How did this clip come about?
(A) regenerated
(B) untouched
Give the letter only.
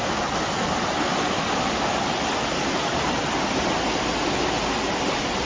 B